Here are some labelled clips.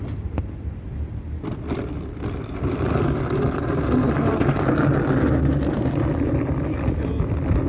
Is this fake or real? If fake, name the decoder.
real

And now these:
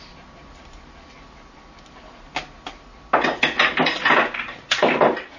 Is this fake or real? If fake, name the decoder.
real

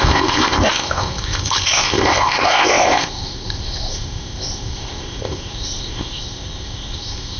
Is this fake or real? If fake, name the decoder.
fake, codec, ZipCodec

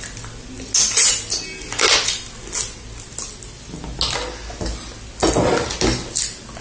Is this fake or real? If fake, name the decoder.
real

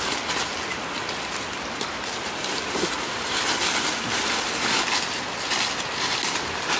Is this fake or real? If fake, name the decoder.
real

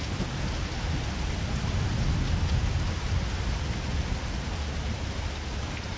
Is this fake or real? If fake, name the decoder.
real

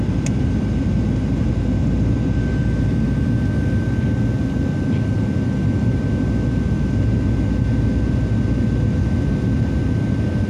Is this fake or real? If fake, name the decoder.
real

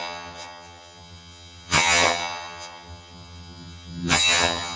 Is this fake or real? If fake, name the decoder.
fake, vocoder, HiFi-GAN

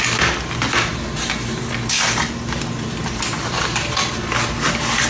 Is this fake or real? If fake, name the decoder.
real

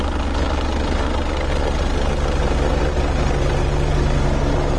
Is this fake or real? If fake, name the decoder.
real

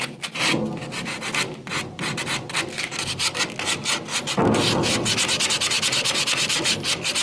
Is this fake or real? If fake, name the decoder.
real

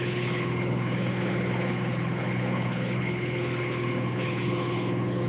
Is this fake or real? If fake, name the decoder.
fake, codec, HILCodec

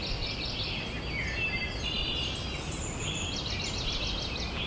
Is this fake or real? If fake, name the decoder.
real